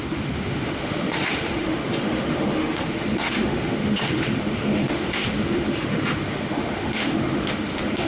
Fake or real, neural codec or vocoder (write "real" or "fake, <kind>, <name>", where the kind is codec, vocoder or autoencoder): fake, autoencoder, DAC-VAE